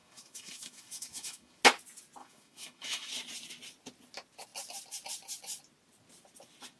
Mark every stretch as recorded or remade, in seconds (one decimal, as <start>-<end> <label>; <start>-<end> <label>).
0.0-1.6 remade; 1.6-2.2 recorded; 2.2-3.1 remade; 3.1-6.8 recorded